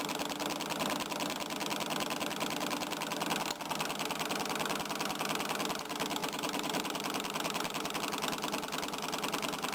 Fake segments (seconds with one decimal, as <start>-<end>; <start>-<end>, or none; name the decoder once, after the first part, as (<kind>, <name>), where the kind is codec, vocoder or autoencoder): 6.2-8.0 (vocoder, BigVGAN v2)